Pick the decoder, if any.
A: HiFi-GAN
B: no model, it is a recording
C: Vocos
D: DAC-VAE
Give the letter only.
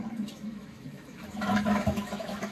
D